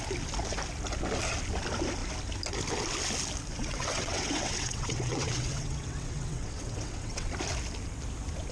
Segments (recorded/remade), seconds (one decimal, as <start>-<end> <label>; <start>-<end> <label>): 0.0-3.6 recorded; 3.6-7.3 remade; 7.3-8.5 recorded